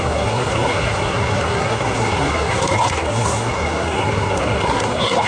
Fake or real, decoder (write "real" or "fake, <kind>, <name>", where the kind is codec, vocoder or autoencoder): fake, codec, SNAC